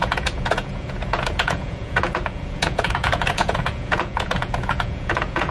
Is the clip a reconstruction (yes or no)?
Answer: yes